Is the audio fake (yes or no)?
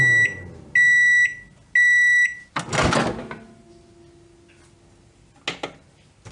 no